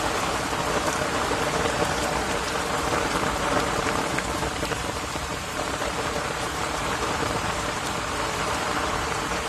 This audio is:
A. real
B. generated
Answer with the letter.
B